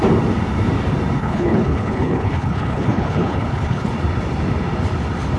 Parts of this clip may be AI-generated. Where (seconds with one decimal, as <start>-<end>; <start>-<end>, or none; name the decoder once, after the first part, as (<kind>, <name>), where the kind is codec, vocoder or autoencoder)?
1.2-3.9 (codec, HILCodec)